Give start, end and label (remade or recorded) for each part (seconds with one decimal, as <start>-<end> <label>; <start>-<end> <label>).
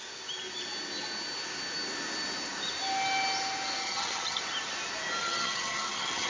0.0-3.8 recorded; 3.8-4.4 remade; 4.4-5.2 recorded; 5.2-6.3 remade